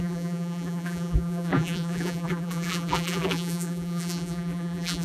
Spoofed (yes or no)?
yes